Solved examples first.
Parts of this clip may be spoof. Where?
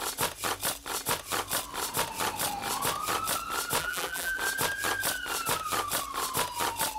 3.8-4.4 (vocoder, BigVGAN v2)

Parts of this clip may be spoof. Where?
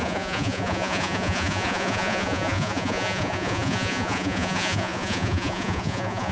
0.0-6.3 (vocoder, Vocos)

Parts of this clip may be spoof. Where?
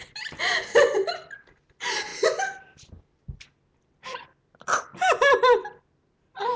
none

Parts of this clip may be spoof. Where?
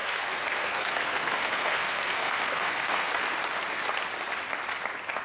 0.0-3.1 (codec, SNAC)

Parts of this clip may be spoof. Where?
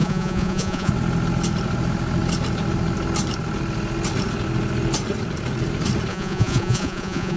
0.0-0.9 (vocoder, Vocos); 6.1-7.4